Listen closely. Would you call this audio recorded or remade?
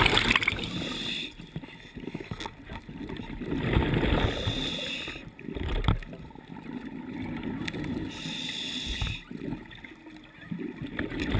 recorded